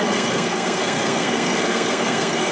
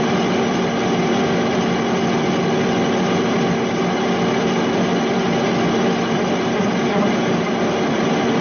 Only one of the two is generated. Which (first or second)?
first